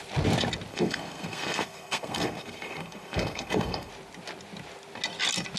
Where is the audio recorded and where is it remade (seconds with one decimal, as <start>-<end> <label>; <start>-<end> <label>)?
0.0-0.7 recorded; 0.7-3.9 remade; 3.9-5.6 recorded